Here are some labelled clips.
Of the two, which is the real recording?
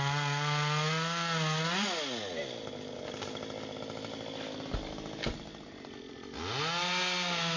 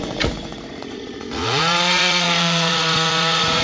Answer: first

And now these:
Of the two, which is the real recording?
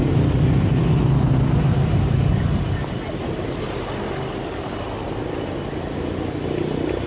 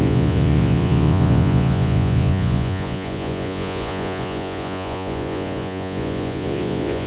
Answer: first